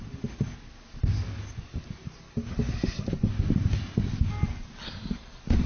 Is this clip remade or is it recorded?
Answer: recorded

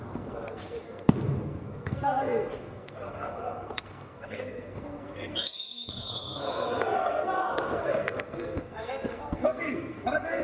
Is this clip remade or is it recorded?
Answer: remade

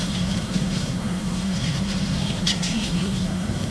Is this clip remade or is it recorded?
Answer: remade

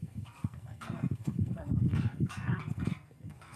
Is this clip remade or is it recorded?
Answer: remade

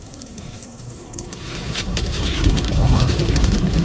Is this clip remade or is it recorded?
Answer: remade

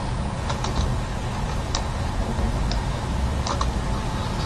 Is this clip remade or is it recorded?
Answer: recorded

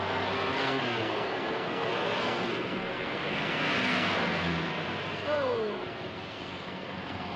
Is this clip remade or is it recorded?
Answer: remade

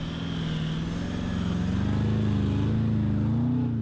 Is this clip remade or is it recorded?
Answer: recorded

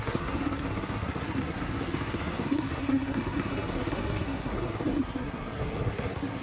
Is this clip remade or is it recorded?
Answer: remade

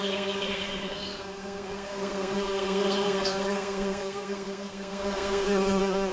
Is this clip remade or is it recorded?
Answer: remade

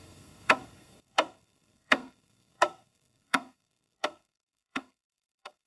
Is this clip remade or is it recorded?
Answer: remade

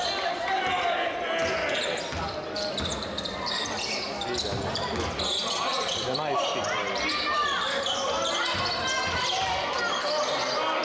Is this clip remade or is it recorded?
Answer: recorded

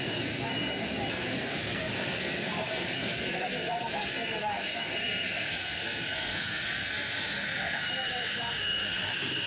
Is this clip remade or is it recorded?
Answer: remade